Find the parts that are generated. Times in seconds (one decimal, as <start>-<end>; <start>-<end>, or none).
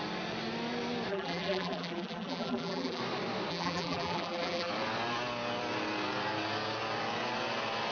1.1-3.0; 3.5-4.7